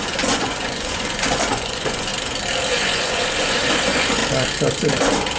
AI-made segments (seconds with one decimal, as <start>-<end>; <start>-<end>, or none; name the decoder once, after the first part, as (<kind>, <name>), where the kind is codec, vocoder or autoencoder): 0.0-2.1 (vocoder, Vocos); 2.7-4.2